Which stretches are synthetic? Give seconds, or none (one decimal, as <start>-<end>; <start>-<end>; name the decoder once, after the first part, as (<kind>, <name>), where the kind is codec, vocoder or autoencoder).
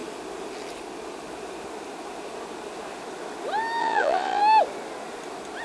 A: 3.8-4.4 (vocoder, Vocos)